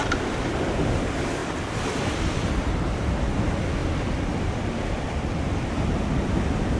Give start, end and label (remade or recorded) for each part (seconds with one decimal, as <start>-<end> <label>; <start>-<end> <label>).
0.0-1.4 recorded; 1.4-3.0 remade; 3.0-6.8 recorded